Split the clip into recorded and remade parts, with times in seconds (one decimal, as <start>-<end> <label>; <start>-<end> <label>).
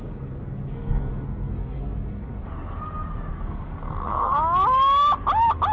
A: 0.0-2.5 remade; 2.5-3.3 recorded; 3.3-4.4 remade; 4.4-5.7 recorded